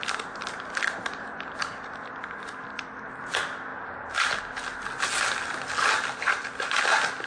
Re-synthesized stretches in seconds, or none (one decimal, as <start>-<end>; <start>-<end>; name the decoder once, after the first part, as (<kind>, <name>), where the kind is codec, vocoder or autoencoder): none